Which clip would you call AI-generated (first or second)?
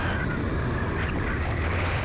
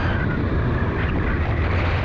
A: second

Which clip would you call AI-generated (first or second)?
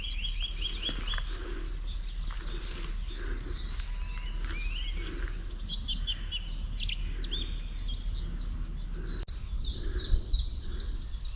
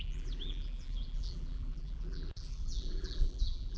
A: second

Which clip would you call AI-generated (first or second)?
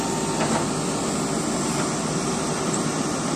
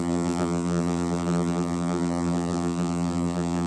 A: second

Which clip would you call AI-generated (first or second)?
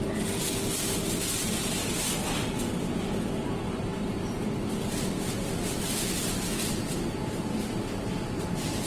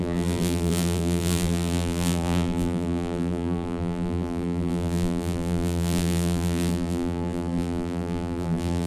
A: second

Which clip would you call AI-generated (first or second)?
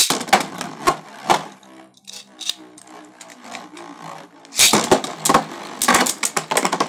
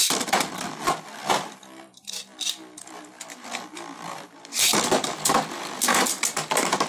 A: second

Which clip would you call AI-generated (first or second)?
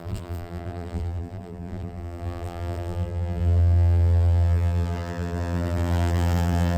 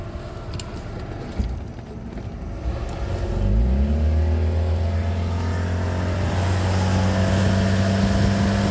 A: first